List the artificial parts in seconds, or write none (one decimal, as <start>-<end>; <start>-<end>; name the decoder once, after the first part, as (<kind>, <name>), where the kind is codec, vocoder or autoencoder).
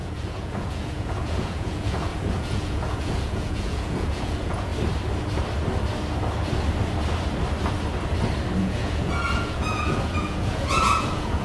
0.0-4.7 (vocoder, Vocos); 8.6-11.4